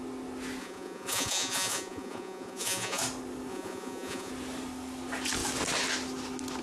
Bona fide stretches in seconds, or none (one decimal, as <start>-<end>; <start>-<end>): 0.0-0.6; 3.0-3.5; 4.3-6.6